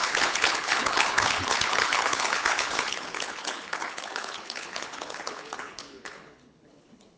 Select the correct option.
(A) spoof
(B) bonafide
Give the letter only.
A